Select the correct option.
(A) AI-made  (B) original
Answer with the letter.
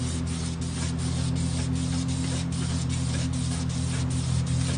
B